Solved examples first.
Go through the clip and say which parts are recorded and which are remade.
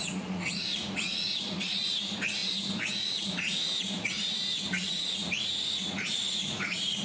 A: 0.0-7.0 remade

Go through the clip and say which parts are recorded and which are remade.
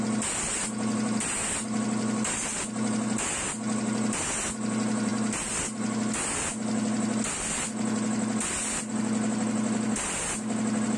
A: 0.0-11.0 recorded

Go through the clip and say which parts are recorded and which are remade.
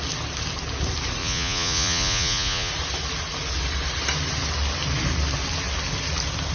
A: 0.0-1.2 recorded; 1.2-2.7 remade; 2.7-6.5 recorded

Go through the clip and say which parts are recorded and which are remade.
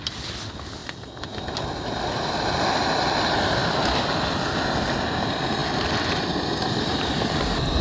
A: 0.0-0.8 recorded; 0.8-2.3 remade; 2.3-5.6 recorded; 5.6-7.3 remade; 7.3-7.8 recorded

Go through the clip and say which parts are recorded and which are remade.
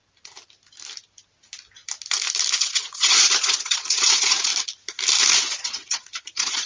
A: 0.0-2.6 recorded; 2.6-4.5 remade; 4.5-5.4 recorded; 5.4-6.7 remade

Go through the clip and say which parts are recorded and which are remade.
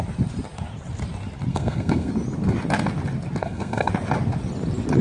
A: 0.0-1.5 recorded; 1.5-2.1 remade; 2.1-3.4 recorded; 3.4-3.9 remade; 3.9-5.0 recorded